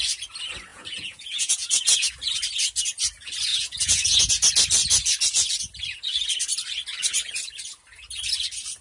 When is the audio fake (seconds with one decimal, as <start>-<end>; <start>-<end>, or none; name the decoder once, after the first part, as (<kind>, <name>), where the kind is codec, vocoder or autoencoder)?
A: 0.7-2.1 (vocoder, Vocos); 3.5-4.3